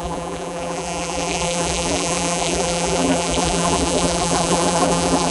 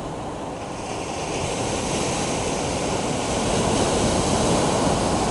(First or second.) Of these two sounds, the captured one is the second